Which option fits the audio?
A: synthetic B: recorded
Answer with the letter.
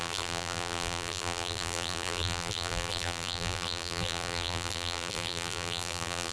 A